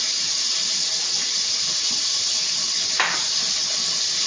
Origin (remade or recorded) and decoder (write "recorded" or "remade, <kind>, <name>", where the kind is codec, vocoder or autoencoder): remade, vocoder, BigVGAN v2